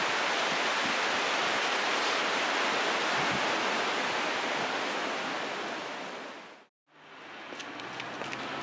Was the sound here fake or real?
real